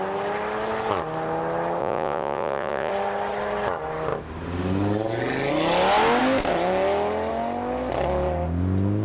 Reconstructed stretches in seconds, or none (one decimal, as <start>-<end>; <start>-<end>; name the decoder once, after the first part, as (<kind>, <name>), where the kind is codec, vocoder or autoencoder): 1.8-2.9 (vocoder, Vocos)